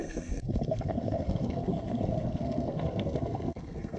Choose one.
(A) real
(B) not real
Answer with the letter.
B